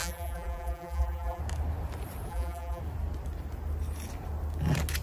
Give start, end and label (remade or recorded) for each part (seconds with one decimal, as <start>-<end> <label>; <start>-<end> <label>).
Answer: 0.0-1.4 remade; 1.4-2.3 recorded; 2.3-2.8 remade; 2.8-5.0 recorded